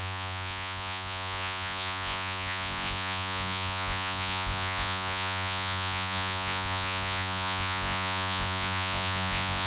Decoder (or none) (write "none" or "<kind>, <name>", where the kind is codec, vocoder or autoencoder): vocoder, Vocos